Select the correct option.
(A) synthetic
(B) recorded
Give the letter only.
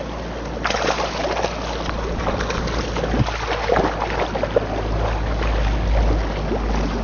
B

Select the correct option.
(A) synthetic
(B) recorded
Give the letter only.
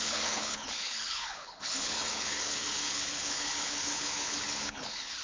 A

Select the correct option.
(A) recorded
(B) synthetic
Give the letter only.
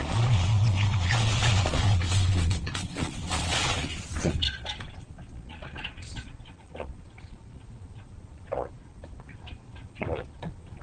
B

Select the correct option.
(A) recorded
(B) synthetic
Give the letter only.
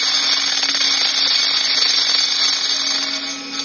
A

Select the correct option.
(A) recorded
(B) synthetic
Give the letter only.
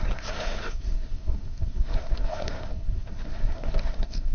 B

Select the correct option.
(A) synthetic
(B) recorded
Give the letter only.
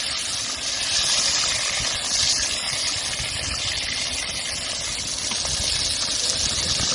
B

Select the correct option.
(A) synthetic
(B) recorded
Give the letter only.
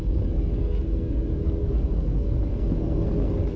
A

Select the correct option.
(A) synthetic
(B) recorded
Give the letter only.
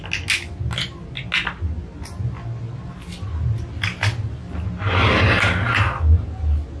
B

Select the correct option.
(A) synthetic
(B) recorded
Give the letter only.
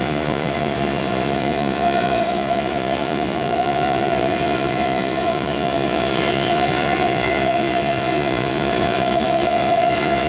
A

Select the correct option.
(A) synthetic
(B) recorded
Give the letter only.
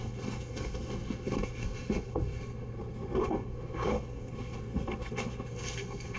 A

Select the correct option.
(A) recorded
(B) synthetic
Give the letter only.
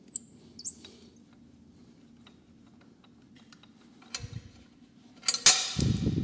A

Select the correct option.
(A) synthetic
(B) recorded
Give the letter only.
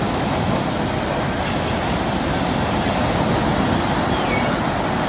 B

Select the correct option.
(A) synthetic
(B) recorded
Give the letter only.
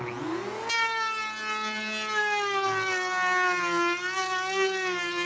B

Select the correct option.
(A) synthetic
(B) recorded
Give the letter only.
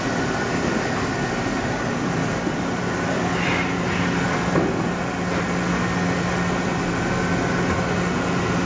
B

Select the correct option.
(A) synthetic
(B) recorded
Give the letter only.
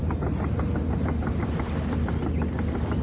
B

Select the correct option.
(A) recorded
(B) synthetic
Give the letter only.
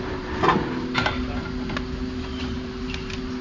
A